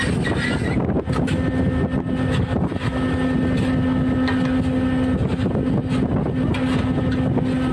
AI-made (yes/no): no